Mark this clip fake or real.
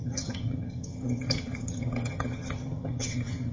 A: fake